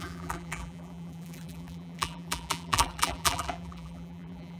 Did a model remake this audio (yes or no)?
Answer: yes